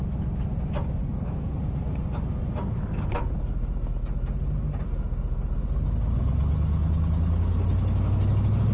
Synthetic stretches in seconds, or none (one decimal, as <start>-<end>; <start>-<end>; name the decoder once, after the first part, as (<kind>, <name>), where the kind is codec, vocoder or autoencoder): 1.0-1.6 (codec, SNAC)